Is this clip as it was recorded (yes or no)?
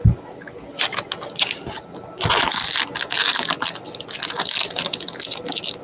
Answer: yes